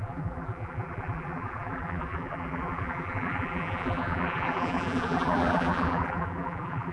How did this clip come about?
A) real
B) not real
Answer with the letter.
B